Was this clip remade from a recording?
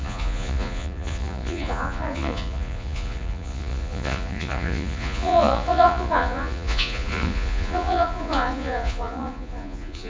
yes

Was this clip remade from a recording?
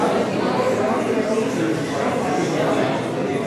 no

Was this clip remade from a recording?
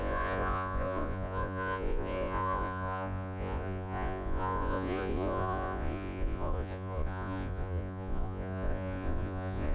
yes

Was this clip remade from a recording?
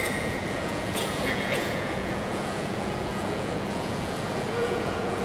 yes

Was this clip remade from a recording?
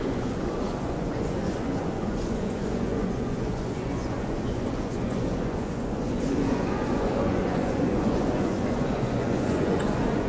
yes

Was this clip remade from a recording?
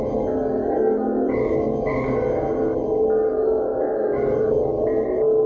no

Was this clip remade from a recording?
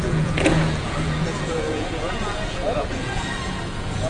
yes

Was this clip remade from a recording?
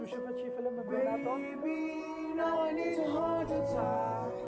no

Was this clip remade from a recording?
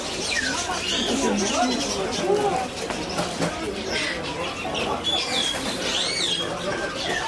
no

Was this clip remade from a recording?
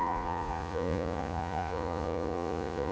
yes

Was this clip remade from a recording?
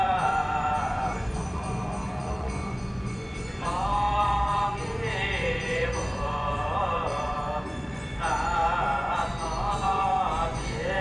yes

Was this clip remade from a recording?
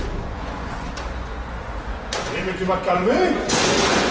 yes